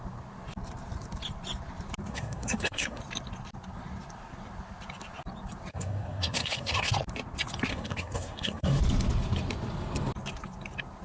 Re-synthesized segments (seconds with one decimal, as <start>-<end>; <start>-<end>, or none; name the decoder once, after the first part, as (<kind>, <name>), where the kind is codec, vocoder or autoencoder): 2.1-3.0 (codec, SNAC); 5.7-6.9; 7.7-8.8